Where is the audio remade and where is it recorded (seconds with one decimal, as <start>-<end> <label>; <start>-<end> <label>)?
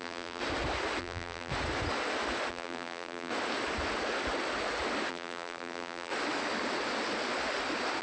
0.0-0.4 remade; 0.4-1.0 recorded; 1.0-1.5 remade; 1.5-2.5 recorded; 2.5-3.3 remade; 3.3-5.1 recorded; 5.1-6.1 remade; 6.1-8.0 recorded